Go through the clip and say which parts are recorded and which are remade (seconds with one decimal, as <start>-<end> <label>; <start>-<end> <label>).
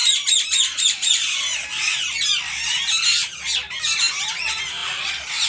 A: 0.0-1.2 remade; 1.2-4.8 recorded; 4.8-5.5 remade